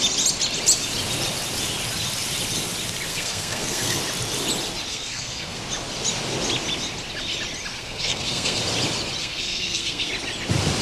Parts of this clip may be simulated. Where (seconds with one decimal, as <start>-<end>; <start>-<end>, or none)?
3.1-4.0; 4.9-5.6; 7.7-8.6; 9.2-10.1